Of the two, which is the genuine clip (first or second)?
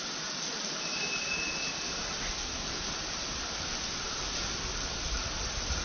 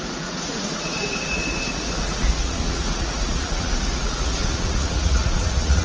first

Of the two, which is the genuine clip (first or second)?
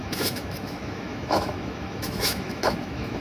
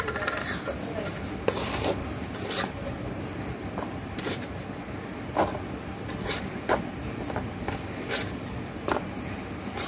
second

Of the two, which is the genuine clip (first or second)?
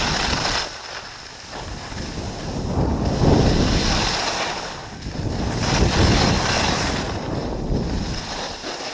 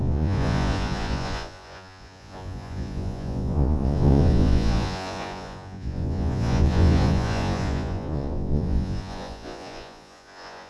first